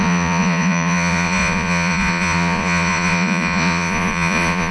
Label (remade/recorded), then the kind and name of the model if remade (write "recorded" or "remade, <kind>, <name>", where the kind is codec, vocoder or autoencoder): remade, vocoder, Vocos